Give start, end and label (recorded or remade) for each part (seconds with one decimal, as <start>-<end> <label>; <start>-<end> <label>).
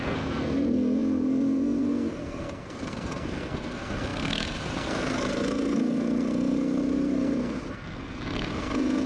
0.0-9.1 remade